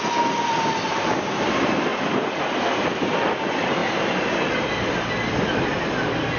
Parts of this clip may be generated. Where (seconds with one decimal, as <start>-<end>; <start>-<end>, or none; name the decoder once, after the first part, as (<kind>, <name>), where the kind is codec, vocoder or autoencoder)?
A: 0.9-1.5 (vocoder, BigVGAN v2); 1.9-3.0; 3.8-4.7